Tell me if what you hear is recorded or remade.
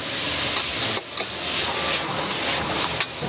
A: recorded